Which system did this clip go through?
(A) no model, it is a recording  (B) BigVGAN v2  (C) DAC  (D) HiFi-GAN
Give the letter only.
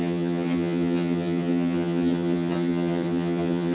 D